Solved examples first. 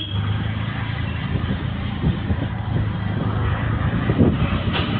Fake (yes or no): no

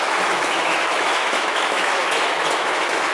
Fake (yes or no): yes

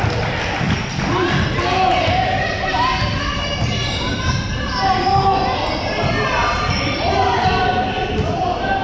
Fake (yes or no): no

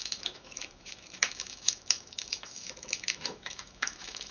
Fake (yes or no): yes